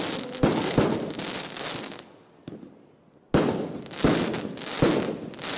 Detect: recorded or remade recorded